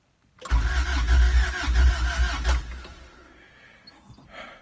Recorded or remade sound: recorded